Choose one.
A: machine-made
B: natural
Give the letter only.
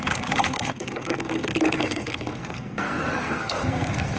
A